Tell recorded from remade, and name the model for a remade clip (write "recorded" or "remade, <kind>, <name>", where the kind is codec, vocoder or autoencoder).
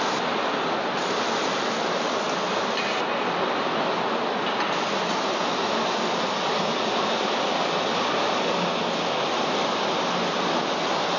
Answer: recorded